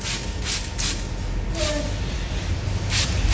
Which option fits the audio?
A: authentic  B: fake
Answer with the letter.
A